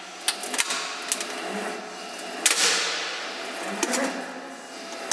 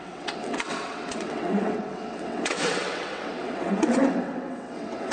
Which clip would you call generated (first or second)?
second